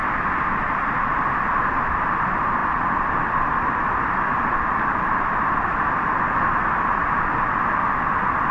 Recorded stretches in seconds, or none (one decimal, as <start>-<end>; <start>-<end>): 0.0-8.5